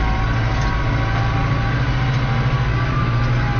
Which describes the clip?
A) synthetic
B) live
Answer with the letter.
B